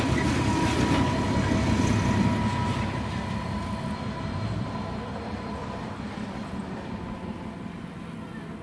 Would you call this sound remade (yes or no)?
no